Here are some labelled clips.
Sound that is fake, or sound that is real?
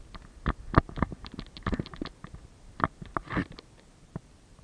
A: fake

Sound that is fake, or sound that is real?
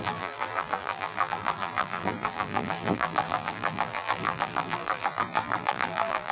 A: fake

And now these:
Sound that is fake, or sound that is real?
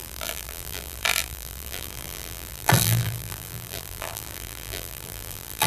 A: fake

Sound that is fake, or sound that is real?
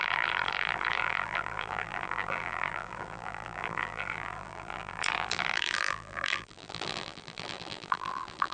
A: fake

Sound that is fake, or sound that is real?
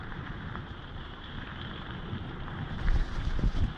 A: fake